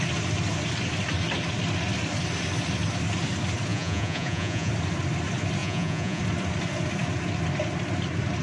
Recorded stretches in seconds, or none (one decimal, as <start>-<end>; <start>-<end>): 0.0-3.7; 4.7-5.6; 6.2-8.4